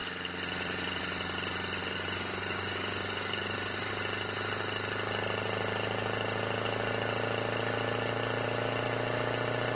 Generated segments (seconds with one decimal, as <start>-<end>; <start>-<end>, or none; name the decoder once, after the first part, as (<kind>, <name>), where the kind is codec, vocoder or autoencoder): 1.8-3.9 (codec, DAC)